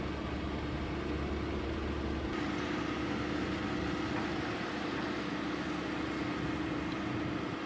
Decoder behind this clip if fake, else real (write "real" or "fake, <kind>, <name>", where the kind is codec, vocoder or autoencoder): real